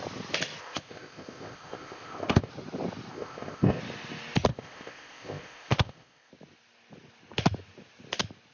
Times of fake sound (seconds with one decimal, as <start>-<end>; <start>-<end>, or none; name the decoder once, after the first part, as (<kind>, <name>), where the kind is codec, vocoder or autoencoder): 0.6-2.5 (codec, ZipCodec); 3.1-3.8; 4.5-6.3